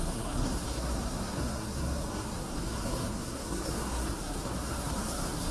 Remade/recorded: remade